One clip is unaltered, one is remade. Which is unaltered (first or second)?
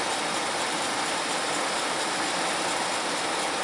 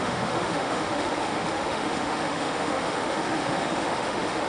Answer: first